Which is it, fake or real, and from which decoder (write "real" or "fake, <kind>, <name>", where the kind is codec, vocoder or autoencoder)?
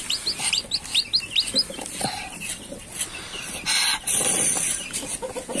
real